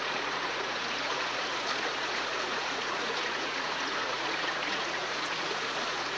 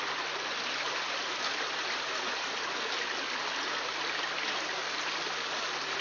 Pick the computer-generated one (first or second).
first